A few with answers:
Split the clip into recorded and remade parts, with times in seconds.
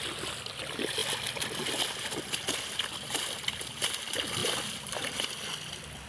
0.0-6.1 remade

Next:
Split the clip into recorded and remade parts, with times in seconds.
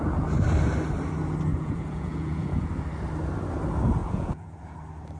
0.0-1.5 recorded; 1.5-2.7 remade; 2.7-4.0 recorded; 4.0-4.6 remade; 4.6-5.2 recorded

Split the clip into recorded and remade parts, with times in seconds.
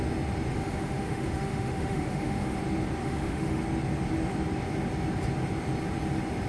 0.0-0.5 recorded; 0.5-2.6 remade; 2.6-3.0 recorded; 3.0-3.6 remade; 3.6-6.5 recorded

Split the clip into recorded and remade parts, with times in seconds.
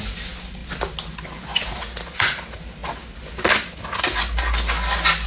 0.0-5.3 recorded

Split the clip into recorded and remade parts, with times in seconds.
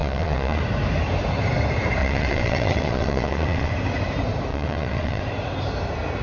0.0-0.6 remade; 0.6-2.0 recorded; 2.0-3.7 remade; 3.7-4.5 recorded; 4.5-5.2 remade; 5.2-6.2 recorded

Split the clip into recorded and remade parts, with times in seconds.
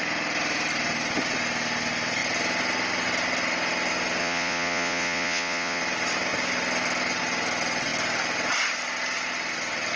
0.0-4.2 recorded; 4.2-5.8 remade; 5.8-10.0 recorded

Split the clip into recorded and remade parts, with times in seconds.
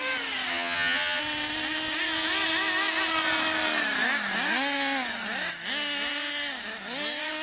0.0-0.5 recorded; 0.5-1.2 remade; 1.2-7.4 recorded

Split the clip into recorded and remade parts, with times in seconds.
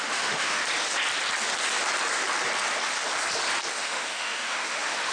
0.0-0.6 remade; 0.6-3.7 recorded; 3.7-5.1 remade